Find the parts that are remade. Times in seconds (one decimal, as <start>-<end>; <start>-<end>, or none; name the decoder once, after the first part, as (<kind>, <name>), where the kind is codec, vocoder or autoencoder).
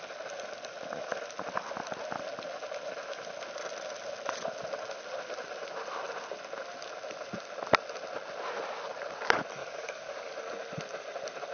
9.6-10.3 (codec, DAC)